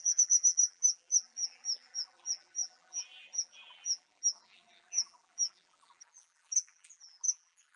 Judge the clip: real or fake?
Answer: fake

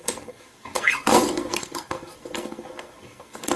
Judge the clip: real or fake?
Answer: fake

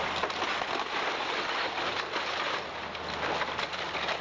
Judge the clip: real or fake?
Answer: real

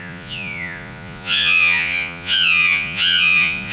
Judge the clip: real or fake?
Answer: fake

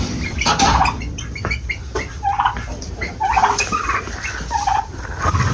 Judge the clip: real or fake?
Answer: fake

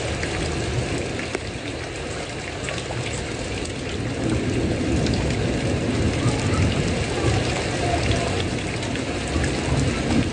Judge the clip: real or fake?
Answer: real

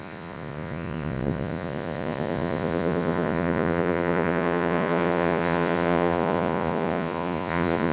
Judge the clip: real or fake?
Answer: fake